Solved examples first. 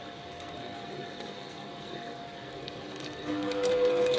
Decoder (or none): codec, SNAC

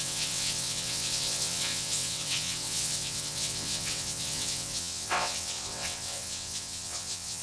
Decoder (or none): vocoder, WaveNeXt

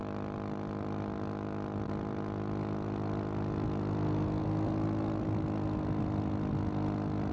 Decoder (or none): none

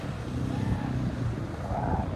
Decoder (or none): none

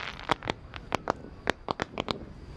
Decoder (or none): none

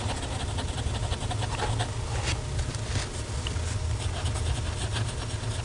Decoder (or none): none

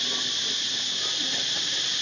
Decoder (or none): none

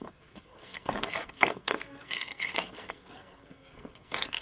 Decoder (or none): codec, SNAC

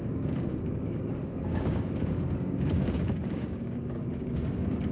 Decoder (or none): codec, DAC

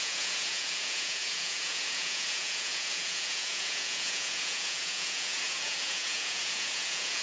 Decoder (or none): vocoder, Vocos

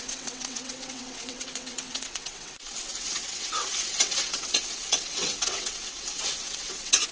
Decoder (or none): vocoder, WaveNeXt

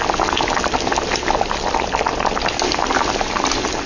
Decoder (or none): none